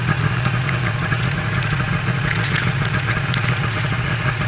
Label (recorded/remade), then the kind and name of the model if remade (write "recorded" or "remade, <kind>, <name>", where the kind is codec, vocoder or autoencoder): remade, vocoder, Vocos